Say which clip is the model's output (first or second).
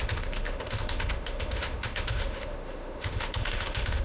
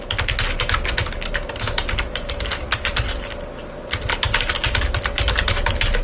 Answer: first